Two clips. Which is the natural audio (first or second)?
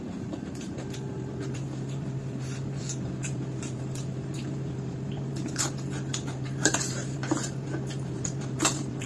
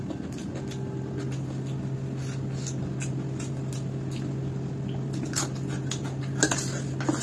second